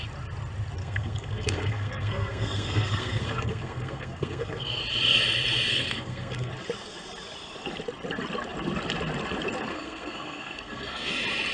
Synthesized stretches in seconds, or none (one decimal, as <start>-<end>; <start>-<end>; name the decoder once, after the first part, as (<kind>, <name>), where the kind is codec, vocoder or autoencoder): 0.8-4.8 (codec, SNAC); 5.7-6.5; 9.7-11.1